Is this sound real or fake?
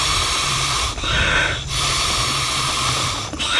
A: real